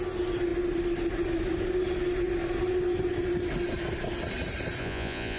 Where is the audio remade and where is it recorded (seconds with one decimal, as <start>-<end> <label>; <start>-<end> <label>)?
0.0-4.8 recorded; 4.8-5.4 remade

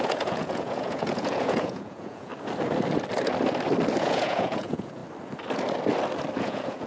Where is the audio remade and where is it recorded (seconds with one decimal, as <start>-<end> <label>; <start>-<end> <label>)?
0.0-2.3 remade; 2.3-4.0 recorded; 4.0-5.0 remade; 5.0-6.4 recorded; 6.4-6.9 remade

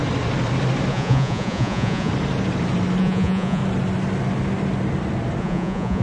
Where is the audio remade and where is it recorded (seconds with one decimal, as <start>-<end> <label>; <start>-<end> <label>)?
0.0-0.9 recorded; 0.9-2.1 remade; 2.1-3.0 recorded; 3.0-3.6 remade; 3.6-5.4 recorded; 5.4-6.0 remade

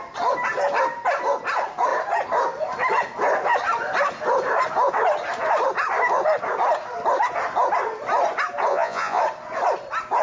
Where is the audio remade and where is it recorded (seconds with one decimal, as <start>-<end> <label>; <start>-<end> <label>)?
0.0-8.7 recorded; 8.7-9.2 remade; 9.2-10.2 recorded